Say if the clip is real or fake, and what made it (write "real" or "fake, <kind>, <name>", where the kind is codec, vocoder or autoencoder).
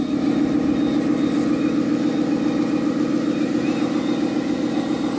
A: real